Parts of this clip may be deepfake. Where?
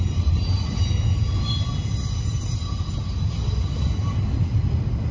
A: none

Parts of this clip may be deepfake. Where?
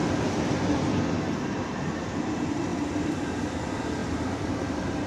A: none